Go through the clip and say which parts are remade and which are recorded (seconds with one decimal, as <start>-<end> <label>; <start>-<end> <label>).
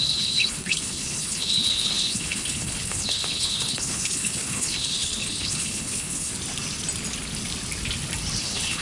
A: 0.0-6.3 remade; 6.3-8.4 recorded; 8.4-8.8 remade